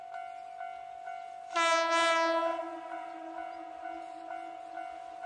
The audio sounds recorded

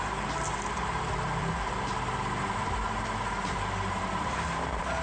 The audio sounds recorded